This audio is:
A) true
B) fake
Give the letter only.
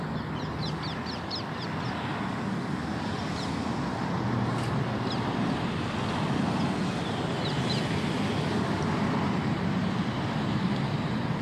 A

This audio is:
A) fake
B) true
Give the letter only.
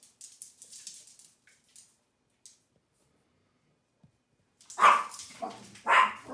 B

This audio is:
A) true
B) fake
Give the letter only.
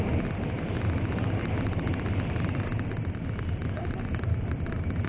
B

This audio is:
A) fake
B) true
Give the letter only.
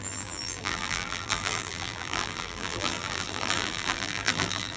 A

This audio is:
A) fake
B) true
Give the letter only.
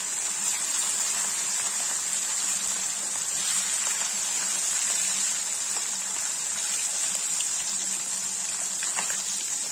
B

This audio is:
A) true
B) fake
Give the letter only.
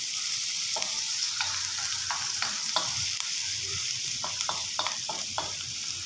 B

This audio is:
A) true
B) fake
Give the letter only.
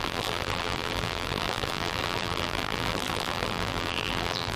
B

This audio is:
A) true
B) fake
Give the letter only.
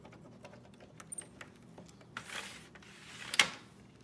A